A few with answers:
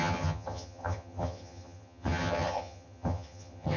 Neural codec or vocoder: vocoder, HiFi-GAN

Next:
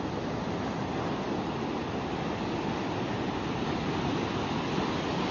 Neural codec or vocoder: none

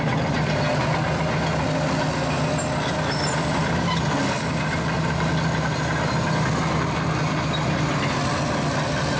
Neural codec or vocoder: none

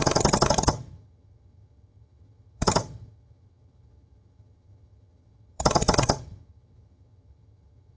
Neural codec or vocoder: vocoder, HiFi-GAN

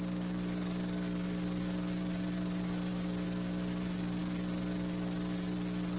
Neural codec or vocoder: none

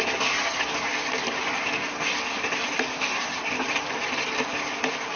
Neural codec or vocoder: none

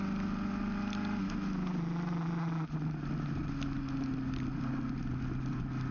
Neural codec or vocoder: none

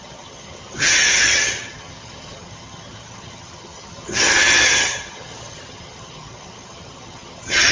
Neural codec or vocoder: vocoder, HiFi-GAN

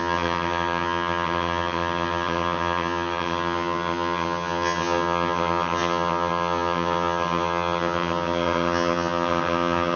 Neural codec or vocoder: vocoder, HiFi-GAN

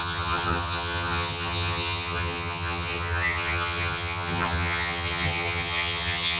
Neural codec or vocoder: vocoder, HiFi-GAN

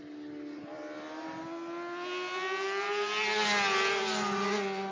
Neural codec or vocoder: none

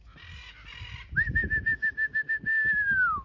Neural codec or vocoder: none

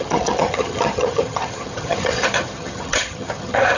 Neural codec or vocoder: vocoder, HiFi-GAN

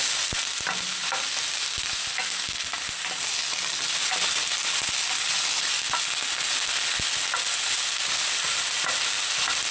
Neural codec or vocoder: none